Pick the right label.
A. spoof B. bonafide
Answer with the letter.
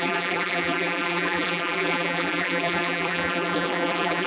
A